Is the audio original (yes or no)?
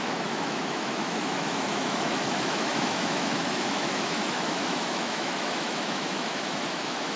no